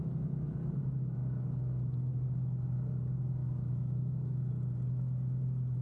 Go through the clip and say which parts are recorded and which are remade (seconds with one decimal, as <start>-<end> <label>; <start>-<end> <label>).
0.0-3.4 recorded; 3.4-4.5 remade; 4.5-5.8 recorded